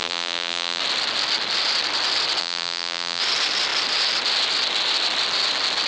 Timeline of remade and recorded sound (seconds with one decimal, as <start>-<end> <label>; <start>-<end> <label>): 0.0-0.8 remade; 0.8-2.4 recorded; 2.4-3.2 remade; 3.2-5.9 recorded